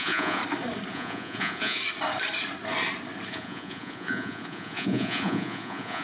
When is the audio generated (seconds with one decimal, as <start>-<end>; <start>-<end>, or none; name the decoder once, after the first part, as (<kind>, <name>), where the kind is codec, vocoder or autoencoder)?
0.0-0.4 (vocoder, Vocos); 0.9-1.8; 3.3-6.0